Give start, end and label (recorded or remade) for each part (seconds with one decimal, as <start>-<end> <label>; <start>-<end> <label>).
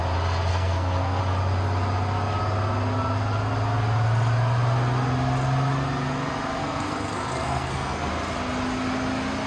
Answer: 0.0-0.5 recorded; 0.5-1.2 remade; 1.2-6.6 recorded; 6.6-8.1 remade; 8.1-9.5 recorded